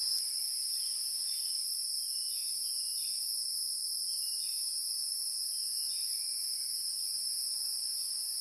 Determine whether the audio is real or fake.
real